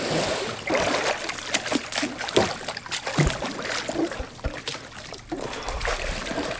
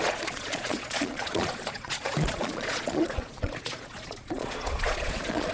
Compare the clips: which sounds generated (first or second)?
second